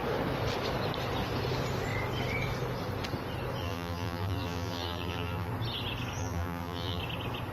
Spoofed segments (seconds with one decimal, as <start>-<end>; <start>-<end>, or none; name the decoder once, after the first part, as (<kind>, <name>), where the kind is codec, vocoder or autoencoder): 3.6-5.5 (vocoder, BigVGAN v2); 6.2-7.0